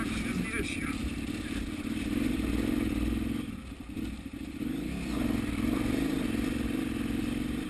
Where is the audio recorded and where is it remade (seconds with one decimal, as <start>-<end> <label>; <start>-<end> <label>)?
0.0-7.7 recorded